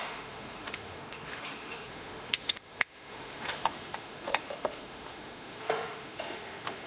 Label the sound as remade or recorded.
remade